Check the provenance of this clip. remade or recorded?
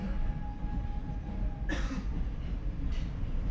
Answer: recorded